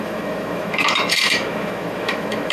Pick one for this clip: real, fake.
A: fake